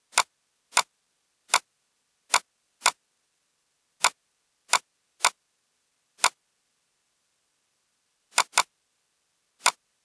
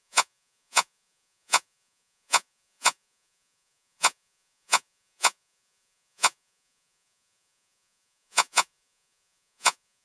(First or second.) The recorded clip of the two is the first